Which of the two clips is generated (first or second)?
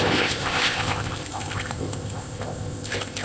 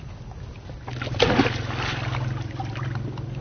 first